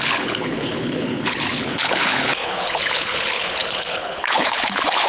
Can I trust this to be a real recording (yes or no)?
no